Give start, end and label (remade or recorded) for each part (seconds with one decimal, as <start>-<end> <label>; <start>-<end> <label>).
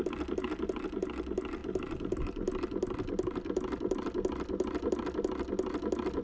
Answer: 0.0-6.2 recorded